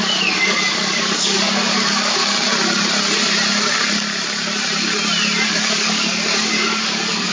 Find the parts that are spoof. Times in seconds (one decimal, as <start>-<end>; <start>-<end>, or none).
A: 0.0-2.2; 5.5-7.3